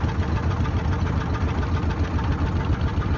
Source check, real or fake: real